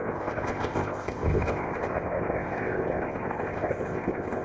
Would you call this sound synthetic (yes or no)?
yes